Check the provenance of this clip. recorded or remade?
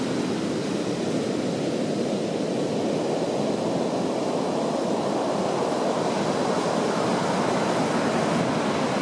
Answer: recorded